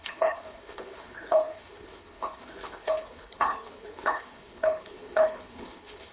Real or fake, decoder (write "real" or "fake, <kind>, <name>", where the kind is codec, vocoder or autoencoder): fake, codec, HILCodec